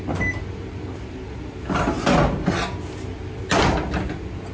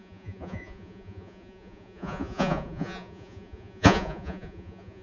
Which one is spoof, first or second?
second